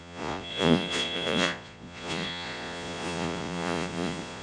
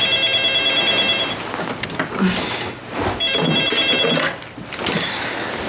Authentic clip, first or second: second